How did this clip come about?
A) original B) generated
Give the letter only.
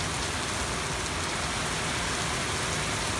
A